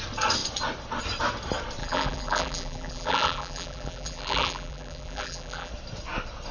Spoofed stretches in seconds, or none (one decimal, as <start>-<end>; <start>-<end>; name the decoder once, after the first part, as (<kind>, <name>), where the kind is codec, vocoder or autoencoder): 1.8-5.7 (vocoder, BigVGAN v2)